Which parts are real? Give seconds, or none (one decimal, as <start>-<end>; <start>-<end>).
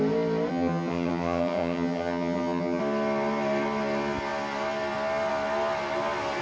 0.0-0.5; 2.8-6.4